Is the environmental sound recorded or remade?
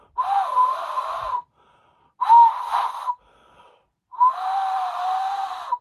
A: recorded